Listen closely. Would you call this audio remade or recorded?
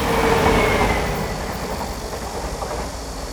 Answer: recorded